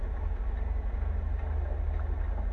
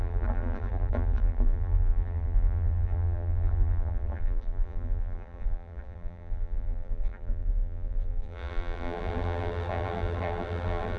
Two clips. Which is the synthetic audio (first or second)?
second